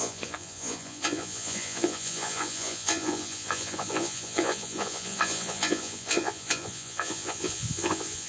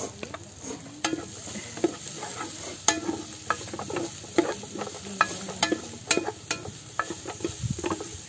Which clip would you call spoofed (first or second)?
first